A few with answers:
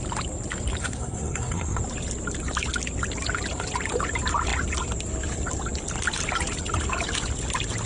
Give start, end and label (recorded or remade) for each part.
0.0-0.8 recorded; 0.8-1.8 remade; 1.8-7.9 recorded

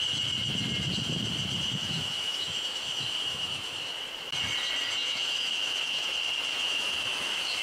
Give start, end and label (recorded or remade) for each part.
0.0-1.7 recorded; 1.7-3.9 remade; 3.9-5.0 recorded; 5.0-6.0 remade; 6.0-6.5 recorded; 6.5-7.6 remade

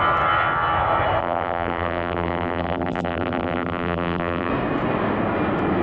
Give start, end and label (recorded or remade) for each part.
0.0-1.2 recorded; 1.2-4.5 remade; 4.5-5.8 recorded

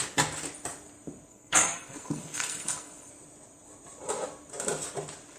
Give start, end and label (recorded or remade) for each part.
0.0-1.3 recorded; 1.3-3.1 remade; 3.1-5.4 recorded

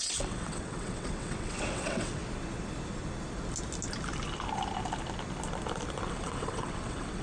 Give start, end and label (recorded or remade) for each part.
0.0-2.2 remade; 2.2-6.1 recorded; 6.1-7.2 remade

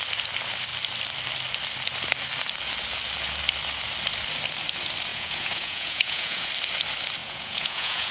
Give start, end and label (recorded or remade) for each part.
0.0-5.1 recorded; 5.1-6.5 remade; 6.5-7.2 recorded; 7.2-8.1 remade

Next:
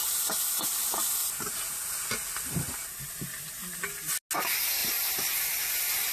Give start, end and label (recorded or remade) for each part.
0.0-4.8 recorded; 4.8-5.3 remade; 5.3-6.1 recorded

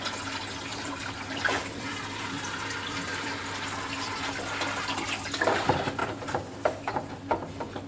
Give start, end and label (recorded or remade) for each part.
0.0-0.7 recorded; 0.7-3.6 remade; 3.6-6.0 recorded; 6.0-7.1 remade; 7.1-7.9 recorded